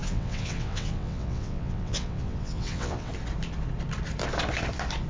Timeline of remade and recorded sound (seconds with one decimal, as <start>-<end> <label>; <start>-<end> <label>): 0.0-3.1 remade; 3.1-5.1 recorded